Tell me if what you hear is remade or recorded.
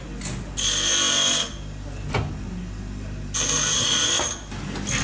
recorded